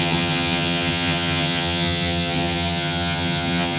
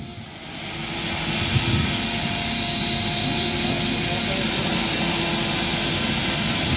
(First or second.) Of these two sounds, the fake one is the first